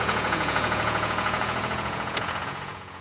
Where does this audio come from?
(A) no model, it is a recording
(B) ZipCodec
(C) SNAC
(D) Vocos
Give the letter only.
D